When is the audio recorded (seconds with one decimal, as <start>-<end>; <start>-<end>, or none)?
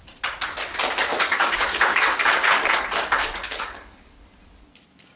0.0-1.1; 4.2-5.2